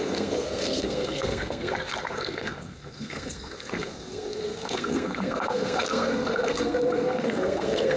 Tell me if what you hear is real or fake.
fake